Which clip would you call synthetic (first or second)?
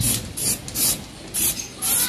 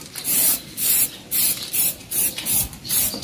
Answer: second